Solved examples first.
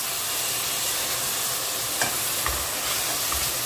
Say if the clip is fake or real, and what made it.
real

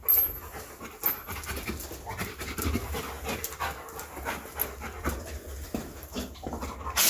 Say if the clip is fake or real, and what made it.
real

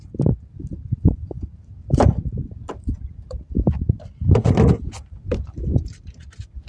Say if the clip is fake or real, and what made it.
fake, vocoder, BigVGAN v2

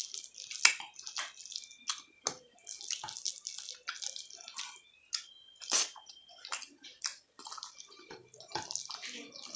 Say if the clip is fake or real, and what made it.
real